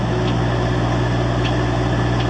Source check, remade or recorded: recorded